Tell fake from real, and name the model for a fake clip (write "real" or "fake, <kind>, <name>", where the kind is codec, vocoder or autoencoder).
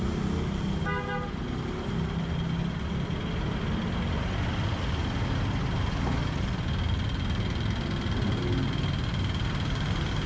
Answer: real